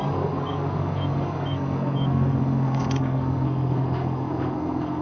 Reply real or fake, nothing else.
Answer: fake